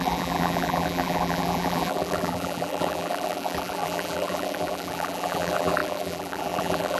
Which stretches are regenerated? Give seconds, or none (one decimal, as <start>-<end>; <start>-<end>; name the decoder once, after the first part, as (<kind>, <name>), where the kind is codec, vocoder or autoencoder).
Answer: 0.0-7.0 (vocoder, BigVGAN v2)